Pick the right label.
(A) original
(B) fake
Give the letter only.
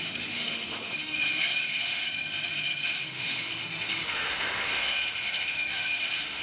B